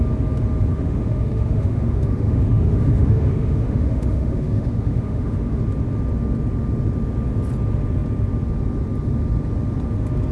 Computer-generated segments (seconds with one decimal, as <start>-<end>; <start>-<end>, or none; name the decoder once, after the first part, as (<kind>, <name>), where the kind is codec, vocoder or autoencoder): 0.7-5.6 (autoencoder, DAC-VAE)